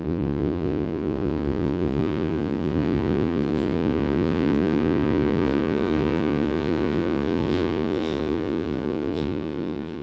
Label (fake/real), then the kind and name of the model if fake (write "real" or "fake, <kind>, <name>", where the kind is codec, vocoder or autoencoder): fake, vocoder, Vocos